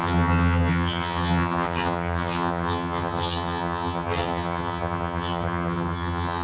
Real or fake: fake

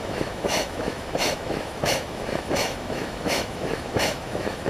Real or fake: fake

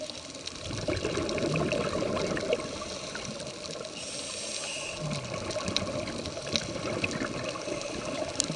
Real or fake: real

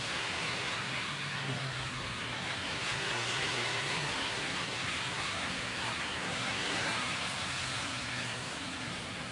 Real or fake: fake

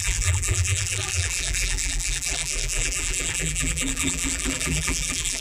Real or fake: fake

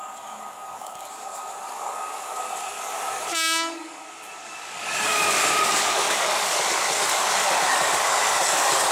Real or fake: fake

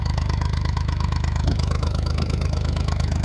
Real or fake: fake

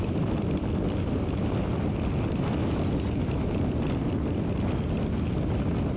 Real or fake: real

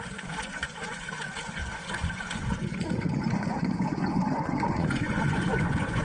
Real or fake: fake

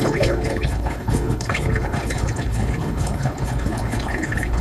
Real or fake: fake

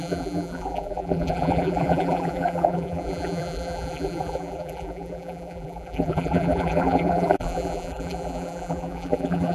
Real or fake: fake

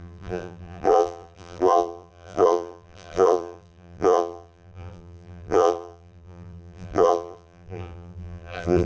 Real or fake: fake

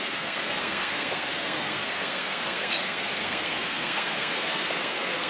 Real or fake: fake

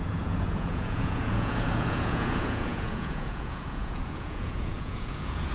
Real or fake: fake